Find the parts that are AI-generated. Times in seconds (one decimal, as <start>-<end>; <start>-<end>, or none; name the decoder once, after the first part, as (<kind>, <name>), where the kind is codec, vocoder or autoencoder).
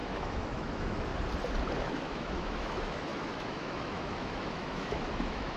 0.0-1.1 (autoencoder, DAC-VAE); 1.8-5.6